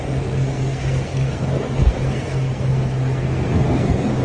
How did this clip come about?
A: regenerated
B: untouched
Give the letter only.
A